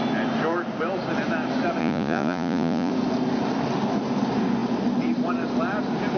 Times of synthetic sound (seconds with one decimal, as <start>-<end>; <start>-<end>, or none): 1.8-2.9